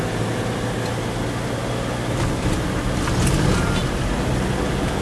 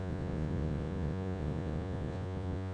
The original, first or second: first